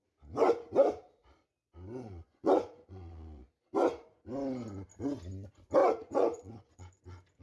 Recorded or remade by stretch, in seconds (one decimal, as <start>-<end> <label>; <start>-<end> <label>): 0.0-1.9 recorded; 1.9-3.5 remade; 3.5-5.8 recorded; 5.8-7.0 remade; 7.0-7.4 recorded